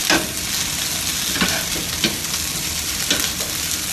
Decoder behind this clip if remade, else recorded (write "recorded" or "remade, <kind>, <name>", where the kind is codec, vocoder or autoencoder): recorded